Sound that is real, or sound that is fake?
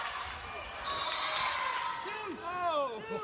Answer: real